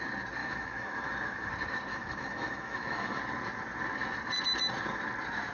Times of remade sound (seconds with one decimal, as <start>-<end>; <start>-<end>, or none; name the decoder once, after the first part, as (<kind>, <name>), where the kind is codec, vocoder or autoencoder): 0.4-1.5 (autoencoder, DAC-VAE); 1.9-3.2